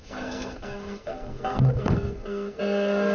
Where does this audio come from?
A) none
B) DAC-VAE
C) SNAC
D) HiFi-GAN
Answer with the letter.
C